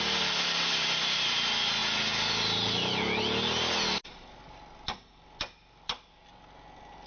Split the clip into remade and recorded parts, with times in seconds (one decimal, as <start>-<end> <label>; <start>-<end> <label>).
0.0-7.1 recorded